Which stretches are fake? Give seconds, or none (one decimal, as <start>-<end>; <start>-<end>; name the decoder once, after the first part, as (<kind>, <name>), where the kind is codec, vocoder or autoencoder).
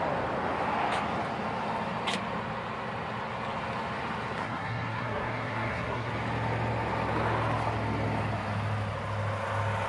4.4-6.1 (codec, SNAC)